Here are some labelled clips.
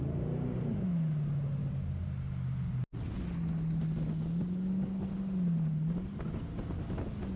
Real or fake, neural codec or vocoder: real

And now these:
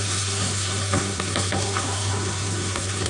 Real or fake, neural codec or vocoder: fake, codec, SNAC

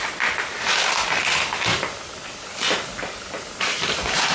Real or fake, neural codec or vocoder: real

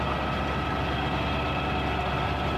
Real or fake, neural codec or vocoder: real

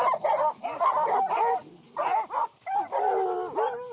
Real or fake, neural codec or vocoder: real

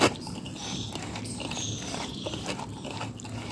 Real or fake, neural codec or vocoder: real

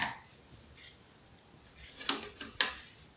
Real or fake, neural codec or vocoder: real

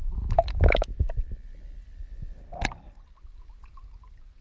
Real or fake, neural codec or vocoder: real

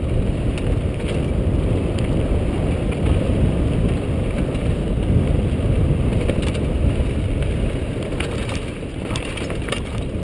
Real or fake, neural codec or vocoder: real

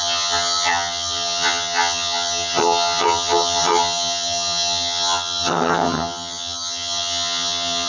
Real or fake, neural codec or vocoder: fake, vocoder, HiFi-GAN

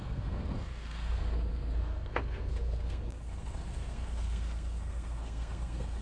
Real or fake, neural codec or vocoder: fake, codec, SNAC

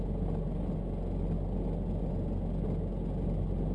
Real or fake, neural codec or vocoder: real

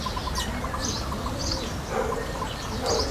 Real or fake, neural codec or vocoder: real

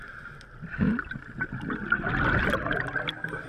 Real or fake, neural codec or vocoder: real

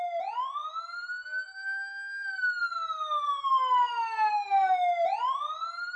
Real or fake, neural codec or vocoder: real